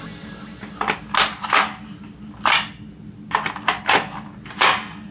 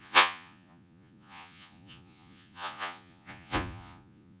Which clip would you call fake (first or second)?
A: second